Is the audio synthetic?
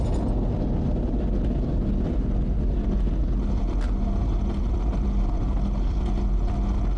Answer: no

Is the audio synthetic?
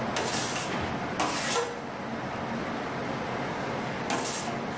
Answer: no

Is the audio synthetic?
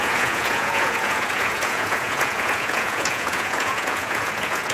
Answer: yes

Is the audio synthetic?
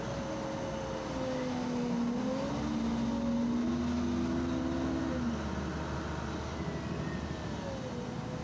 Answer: no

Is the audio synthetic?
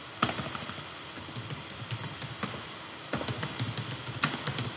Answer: no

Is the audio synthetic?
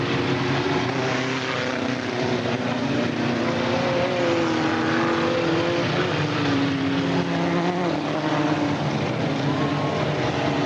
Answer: no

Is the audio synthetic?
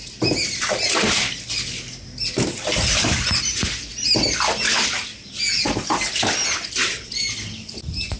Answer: no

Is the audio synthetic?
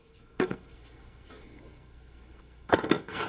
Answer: yes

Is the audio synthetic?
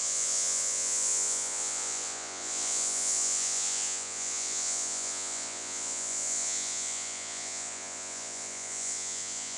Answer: yes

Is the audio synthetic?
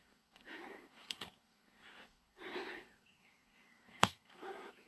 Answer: yes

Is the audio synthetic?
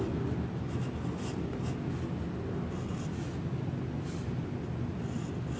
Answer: no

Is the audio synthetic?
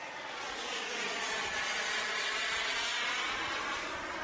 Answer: no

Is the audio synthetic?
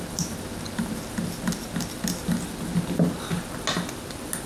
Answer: no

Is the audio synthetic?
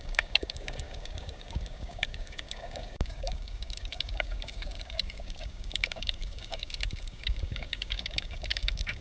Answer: yes